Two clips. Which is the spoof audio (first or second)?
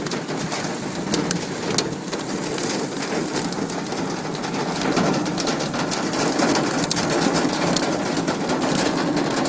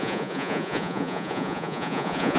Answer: second